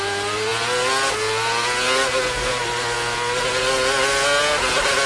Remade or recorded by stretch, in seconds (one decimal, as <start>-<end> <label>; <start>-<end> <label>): 0.0-5.1 recorded